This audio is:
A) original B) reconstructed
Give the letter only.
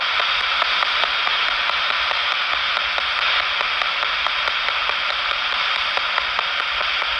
A